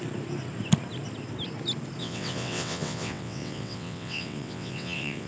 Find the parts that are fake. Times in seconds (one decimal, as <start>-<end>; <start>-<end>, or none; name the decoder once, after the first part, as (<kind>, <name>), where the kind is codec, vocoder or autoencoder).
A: 2.0-5.3 (vocoder, WaveNeXt)